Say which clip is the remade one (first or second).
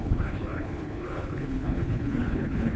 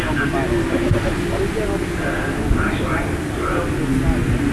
first